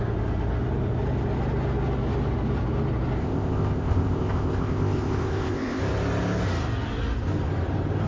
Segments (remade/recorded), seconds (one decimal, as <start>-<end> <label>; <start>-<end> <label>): 0.0-3.2 recorded; 3.2-5.8 remade; 5.8-8.1 recorded